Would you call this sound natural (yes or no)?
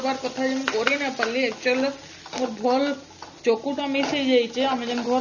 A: yes